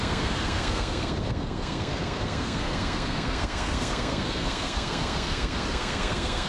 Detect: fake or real fake